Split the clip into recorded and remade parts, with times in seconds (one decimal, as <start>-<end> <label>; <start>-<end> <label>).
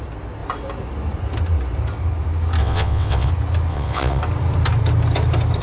0.0-2.6 recorded; 2.6-3.3 remade; 3.3-3.7 recorded; 3.7-4.2 remade; 4.2-5.6 recorded